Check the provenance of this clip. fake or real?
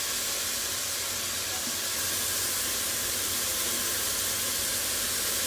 real